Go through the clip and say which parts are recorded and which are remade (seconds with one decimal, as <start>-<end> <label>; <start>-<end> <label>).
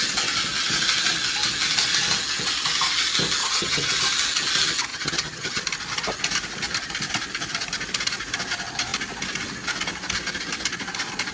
0.0-3.4 recorded; 3.4-3.9 remade; 3.9-4.9 recorded; 4.9-5.6 remade; 5.6-11.3 recorded